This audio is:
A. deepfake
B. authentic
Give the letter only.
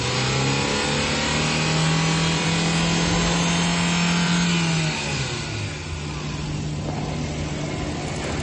B